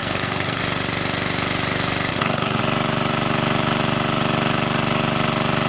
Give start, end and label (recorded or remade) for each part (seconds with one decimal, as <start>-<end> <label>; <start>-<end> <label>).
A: 0.0-0.6 remade; 0.6-2.1 recorded; 2.1-2.6 remade; 2.6-5.7 recorded